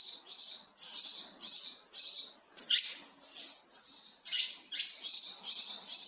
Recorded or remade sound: recorded